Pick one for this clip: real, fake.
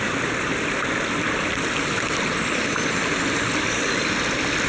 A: real